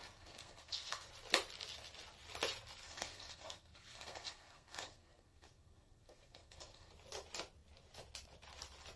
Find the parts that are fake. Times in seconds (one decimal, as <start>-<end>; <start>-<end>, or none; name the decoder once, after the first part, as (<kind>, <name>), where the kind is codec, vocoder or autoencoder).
0.0-1.1 (codec, SNAC); 2.8-6.9